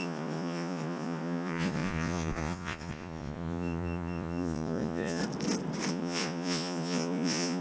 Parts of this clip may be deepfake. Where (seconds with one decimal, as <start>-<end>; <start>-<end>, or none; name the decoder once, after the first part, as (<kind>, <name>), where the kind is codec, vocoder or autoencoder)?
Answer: 0.0-5.2 (vocoder, Vocos); 5.9-7.6